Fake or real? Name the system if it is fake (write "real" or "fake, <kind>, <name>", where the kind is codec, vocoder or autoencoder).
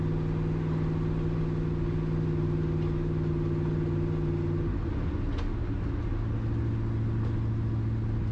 real